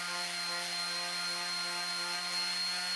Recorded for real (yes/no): yes